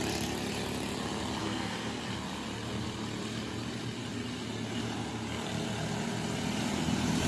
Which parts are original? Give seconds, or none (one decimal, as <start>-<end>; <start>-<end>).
0.0-1.4; 2.0-7.3